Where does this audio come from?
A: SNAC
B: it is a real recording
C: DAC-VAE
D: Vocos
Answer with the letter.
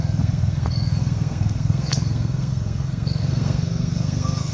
A